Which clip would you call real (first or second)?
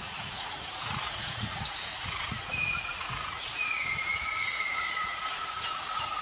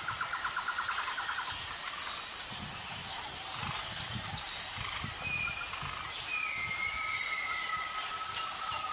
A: second